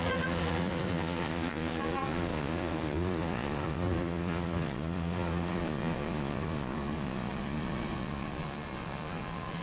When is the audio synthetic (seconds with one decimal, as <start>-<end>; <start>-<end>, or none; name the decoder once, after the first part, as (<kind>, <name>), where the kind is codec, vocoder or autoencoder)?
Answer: 0.0-9.6 (vocoder, Vocos)